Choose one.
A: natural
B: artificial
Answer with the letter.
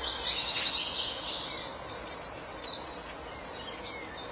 A